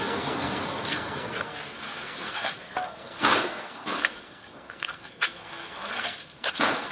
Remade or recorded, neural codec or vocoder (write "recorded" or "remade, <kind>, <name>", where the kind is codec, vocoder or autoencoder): remade, codec, SNAC